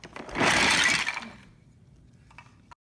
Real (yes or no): yes